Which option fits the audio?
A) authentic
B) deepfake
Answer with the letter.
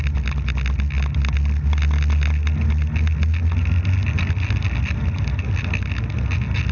A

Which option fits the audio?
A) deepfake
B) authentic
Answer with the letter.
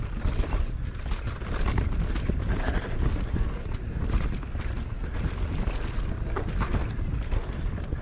B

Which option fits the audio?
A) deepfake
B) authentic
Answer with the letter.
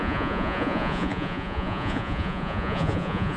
A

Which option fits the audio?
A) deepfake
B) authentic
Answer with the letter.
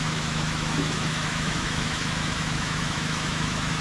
A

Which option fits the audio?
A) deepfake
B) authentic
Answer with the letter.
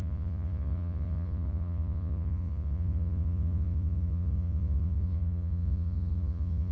A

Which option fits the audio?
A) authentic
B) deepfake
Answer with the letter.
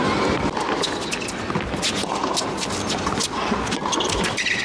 A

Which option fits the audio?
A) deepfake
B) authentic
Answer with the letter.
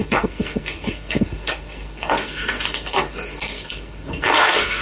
A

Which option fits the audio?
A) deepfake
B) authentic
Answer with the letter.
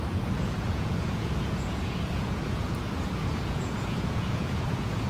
A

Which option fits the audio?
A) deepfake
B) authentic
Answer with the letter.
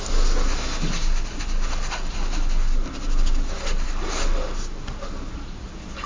B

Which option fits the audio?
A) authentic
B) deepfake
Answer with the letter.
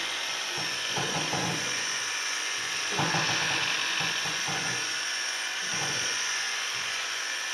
B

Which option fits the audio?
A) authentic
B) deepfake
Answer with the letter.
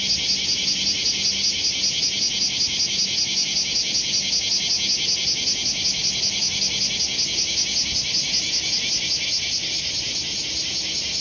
A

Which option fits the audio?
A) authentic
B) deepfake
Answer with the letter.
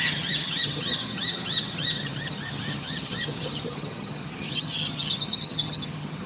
B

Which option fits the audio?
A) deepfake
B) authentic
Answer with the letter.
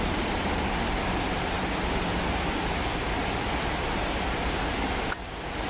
B